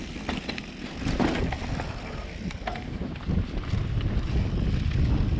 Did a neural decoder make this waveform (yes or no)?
no